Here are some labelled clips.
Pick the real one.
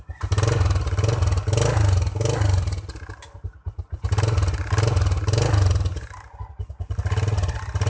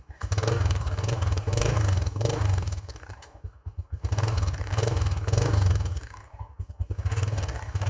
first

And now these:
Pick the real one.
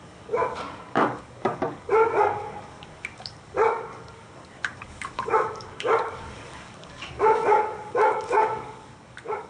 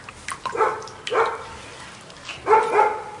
second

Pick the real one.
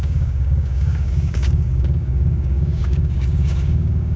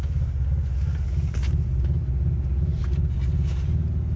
second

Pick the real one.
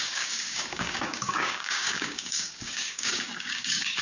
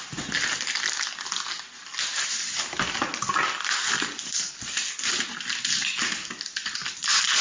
second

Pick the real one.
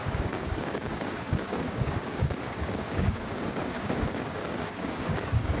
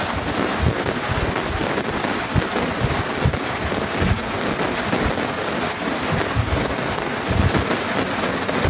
second